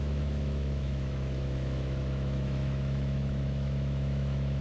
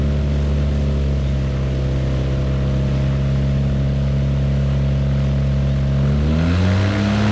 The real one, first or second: second